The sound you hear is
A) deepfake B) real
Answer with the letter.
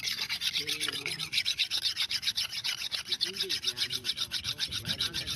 B